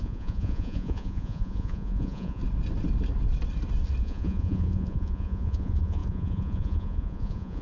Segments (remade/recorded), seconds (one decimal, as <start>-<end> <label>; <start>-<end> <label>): 0.0-2.4 remade; 2.4-4.0 recorded; 4.0-7.6 remade